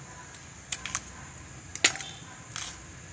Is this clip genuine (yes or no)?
yes